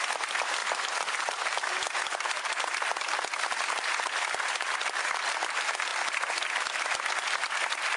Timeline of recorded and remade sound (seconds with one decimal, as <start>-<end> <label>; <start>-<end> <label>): 0.0-8.0 recorded